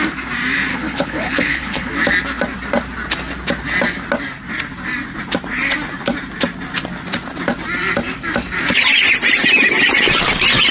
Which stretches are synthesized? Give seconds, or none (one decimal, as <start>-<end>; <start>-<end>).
0.7-1.9